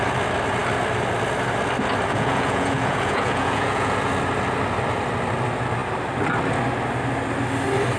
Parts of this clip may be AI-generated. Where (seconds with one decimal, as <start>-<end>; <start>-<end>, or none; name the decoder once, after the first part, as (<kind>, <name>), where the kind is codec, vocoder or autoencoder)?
2.1-4.1 (vocoder, Vocos)